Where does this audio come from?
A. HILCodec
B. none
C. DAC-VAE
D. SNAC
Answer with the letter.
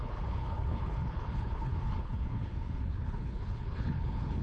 A